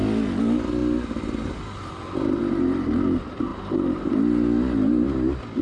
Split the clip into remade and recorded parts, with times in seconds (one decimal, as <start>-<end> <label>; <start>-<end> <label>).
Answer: 0.0-3.5 recorded; 3.5-4.1 remade; 4.1-5.6 recorded